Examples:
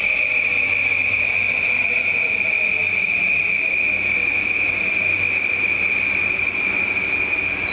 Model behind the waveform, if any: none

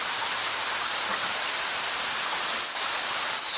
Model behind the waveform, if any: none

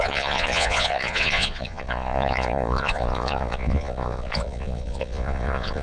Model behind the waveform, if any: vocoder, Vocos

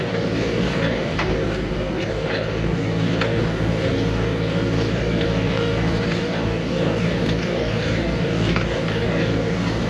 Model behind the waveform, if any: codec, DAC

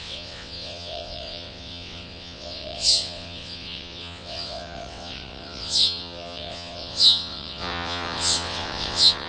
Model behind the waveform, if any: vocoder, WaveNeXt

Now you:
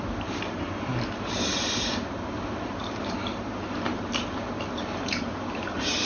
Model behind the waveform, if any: vocoder, BigVGAN v2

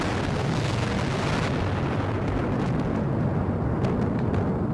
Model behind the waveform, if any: none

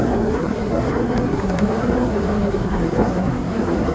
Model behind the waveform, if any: codec, SNAC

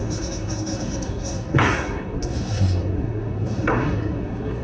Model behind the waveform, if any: codec, SNAC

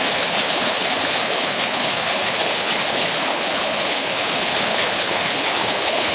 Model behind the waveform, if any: codec, HILCodec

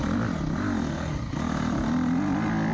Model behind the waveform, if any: none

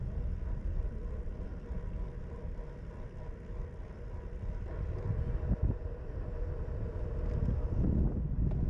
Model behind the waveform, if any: none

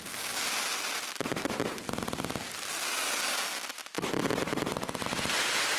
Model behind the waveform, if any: none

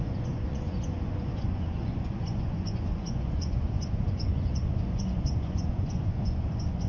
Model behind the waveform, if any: vocoder, Vocos